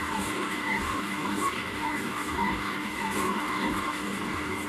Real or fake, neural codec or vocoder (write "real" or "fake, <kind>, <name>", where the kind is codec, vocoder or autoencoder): fake, codec, DAC